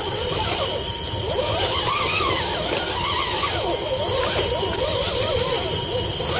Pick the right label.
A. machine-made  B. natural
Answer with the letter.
B